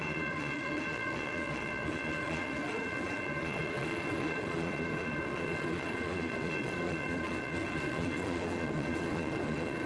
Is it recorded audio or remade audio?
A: remade